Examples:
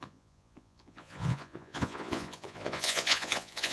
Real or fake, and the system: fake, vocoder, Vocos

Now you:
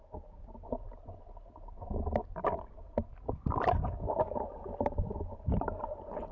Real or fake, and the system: real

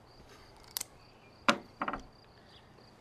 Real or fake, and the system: real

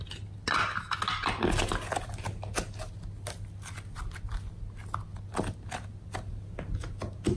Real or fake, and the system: real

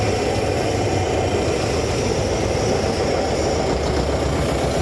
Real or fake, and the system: real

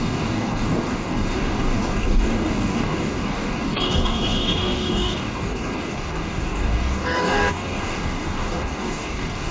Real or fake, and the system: fake, codec, DAC